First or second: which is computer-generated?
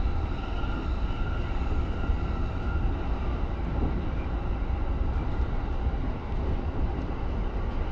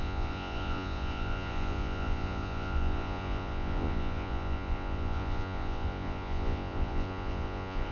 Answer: second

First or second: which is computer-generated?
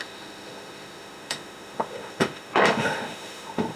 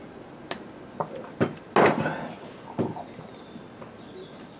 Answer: first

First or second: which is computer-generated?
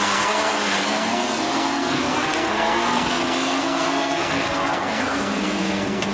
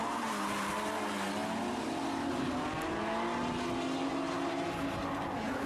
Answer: first